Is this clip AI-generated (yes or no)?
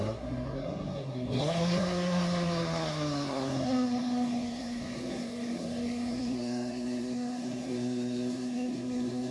yes